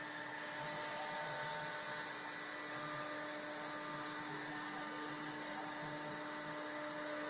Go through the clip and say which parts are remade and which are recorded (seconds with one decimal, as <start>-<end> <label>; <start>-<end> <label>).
0.0-7.3 recorded